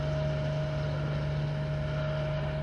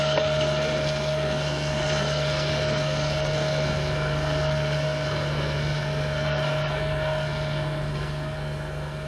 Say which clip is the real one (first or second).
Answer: first